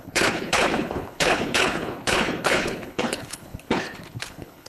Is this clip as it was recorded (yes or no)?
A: no